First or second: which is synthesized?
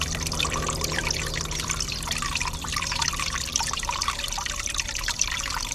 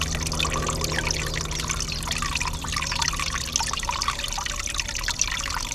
first